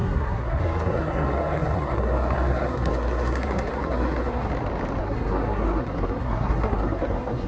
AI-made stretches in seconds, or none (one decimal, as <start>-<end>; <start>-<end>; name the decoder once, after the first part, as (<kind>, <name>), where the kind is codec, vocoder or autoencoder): 0.0-4.5 (codec, SNAC); 5.0-7.5